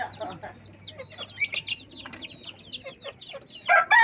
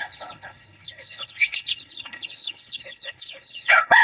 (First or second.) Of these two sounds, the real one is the first